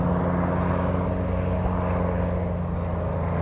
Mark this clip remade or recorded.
recorded